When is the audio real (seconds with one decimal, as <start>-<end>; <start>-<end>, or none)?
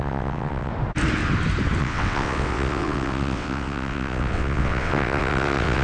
0.7-1.8